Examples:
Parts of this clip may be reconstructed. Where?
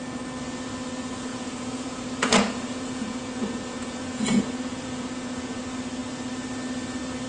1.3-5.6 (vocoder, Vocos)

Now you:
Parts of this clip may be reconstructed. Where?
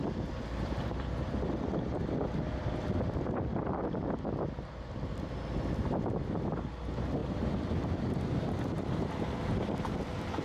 0.0-4.2 (vocoder, BigVGAN v2)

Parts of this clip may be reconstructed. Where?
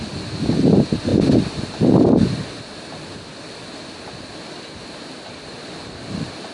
none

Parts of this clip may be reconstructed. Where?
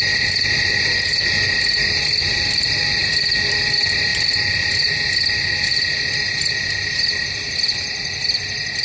none